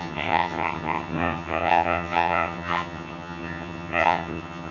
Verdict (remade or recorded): remade